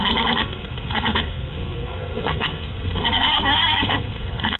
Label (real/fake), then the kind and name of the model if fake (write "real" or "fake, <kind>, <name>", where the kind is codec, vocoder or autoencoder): fake, codec, SNAC